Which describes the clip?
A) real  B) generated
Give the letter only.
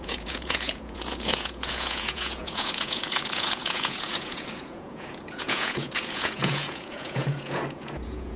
B